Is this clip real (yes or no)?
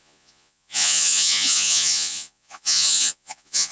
no